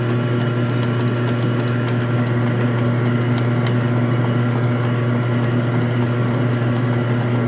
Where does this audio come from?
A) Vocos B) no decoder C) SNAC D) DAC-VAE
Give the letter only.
B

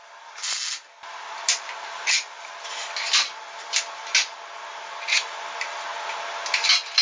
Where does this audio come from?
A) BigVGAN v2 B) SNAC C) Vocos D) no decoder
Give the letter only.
D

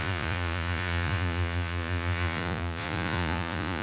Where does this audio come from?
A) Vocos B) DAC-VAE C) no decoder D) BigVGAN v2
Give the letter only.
A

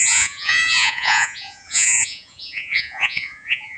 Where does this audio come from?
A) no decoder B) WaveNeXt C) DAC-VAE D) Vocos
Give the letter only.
D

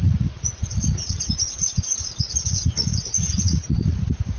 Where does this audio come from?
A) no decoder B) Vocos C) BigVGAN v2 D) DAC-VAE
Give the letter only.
B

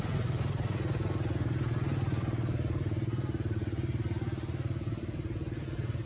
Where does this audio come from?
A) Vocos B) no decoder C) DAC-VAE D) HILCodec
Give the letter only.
B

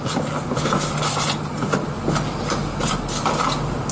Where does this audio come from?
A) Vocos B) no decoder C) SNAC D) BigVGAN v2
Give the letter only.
B